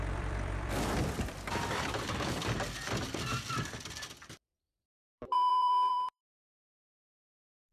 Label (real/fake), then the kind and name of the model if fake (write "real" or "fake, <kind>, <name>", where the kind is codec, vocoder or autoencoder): fake, vocoder, BigVGAN v2